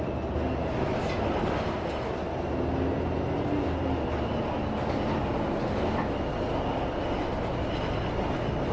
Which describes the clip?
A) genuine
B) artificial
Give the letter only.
A